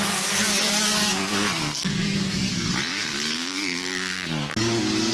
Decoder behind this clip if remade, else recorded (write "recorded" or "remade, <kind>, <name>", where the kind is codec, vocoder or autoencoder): remade, codec, DAC